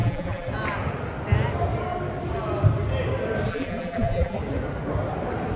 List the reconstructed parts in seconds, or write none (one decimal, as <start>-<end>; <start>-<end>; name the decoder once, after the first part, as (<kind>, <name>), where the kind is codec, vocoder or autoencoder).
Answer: 0.0-0.5 (vocoder, BigVGAN v2); 3.5-4.4